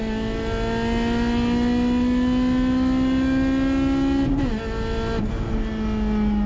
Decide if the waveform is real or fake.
real